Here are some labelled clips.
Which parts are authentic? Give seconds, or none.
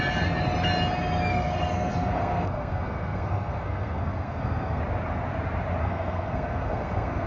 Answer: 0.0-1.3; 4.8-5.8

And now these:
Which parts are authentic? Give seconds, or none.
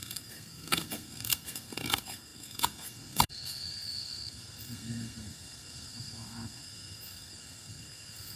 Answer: none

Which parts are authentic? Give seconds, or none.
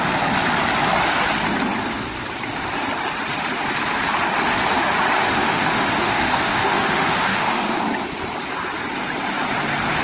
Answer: 0.0-5.4; 7.8-10.0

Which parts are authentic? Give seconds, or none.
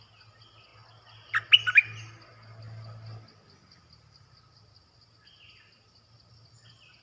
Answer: 0.0-0.7; 1.5-2.3; 4.6-7.0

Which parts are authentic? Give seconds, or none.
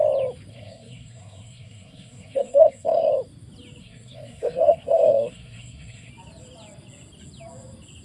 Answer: 0.0-0.5; 3.1-3.8; 6.1-8.0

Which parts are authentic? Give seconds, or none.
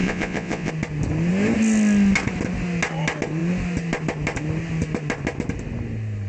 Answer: 0.7-6.3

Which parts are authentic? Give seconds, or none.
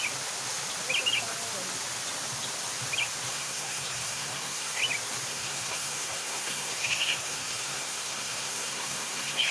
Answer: 0.0-3.3; 4.8-5.3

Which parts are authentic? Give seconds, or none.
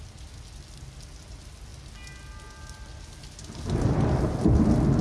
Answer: 0.0-5.0